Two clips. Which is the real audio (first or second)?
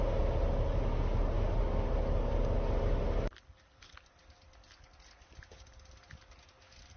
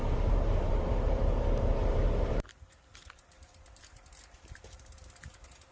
first